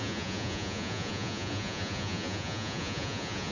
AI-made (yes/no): yes